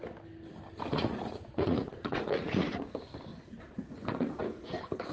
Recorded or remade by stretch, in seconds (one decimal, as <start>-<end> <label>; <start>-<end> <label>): 0.0-0.9 recorded; 0.9-2.8 remade; 2.8-3.3 recorded; 3.3-5.1 remade